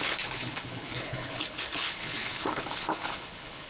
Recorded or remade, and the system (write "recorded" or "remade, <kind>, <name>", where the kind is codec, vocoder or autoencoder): remade, codec, HILCodec